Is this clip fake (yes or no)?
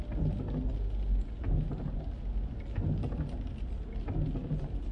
no